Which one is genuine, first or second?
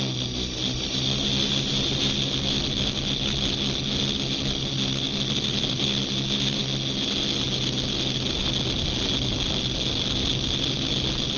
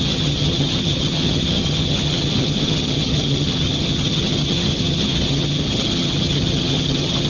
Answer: first